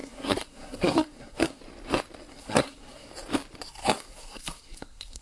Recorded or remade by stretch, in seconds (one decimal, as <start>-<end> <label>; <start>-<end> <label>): 0.0-1.6 remade; 1.6-2.3 recorded; 2.3-3.1 remade; 3.1-3.8 recorded; 3.8-5.2 remade